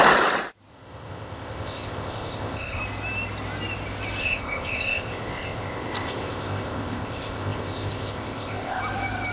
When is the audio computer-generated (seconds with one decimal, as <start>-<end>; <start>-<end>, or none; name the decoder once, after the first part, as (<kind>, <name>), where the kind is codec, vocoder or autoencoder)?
0.7-2.8 (codec, ZipCodec); 4.2-8.8